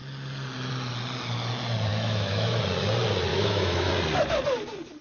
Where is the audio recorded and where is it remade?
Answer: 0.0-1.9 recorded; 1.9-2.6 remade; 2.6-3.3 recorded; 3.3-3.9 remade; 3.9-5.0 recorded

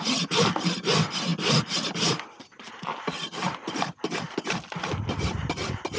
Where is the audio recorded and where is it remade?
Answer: 0.0-6.0 recorded

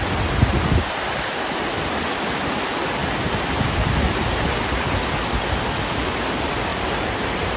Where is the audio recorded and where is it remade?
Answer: 0.0-6.7 recorded; 6.7-7.6 remade

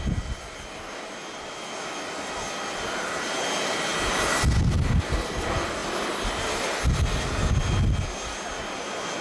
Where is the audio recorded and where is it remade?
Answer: 0.0-9.2 recorded

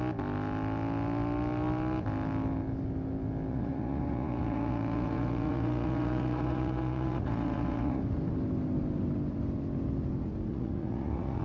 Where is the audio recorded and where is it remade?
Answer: 0.0-3.5 recorded; 3.5-8.0 remade; 8.0-10.5 recorded; 10.5-11.4 remade